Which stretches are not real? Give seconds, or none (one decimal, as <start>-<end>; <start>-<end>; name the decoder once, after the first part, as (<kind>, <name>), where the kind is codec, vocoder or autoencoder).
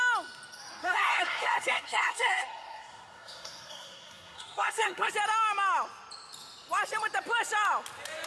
0.8-5.1 (codec, SNAC)